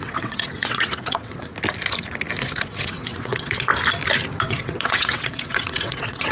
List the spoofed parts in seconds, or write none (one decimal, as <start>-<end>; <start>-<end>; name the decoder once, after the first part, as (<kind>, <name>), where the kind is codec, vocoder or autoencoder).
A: 0.0-1.5 (vocoder, WaveNeXt); 2.4-3.7; 4.4-6.3